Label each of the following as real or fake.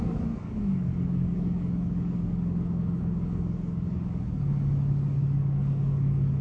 fake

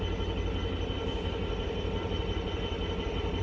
real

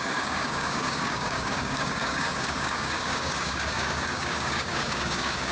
fake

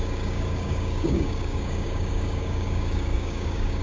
fake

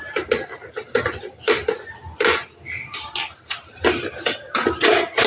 real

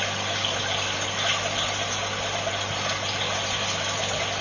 real